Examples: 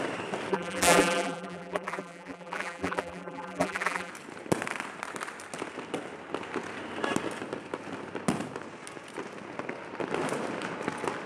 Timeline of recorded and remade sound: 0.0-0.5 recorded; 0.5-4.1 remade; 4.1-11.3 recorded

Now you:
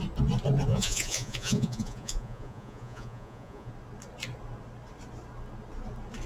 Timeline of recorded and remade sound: 0.0-0.7 recorded; 0.7-3.7 remade; 3.7-6.3 recorded

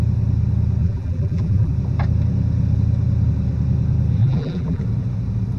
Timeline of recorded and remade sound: 0.0-0.8 recorded; 0.8-1.7 remade; 1.7-4.2 recorded; 4.2-4.8 remade; 4.8-5.6 recorded

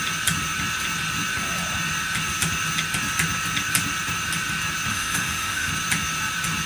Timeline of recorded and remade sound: 0.0-4.9 recorded; 4.9-5.7 remade; 5.7-6.7 recorded

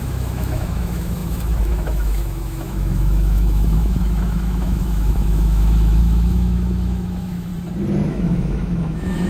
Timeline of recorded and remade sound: 0.0-7.5 remade; 7.5-8.1 recorded; 8.1-9.3 remade

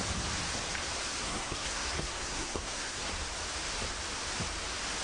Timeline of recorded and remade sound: 0.0-1.2 recorded; 1.2-3.1 remade; 3.1-5.0 recorded

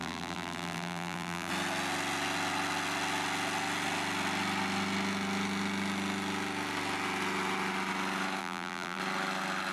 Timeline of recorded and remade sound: 0.0-1.5 remade; 1.5-8.4 recorded; 8.4-9.0 remade; 9.0-9.7 recorded

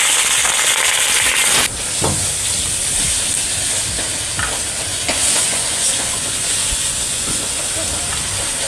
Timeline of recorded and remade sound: 0.0-4.9 recorded; 4.9-7.6 remade; 7.6-8.7 recorded